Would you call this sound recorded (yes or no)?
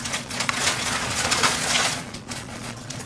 no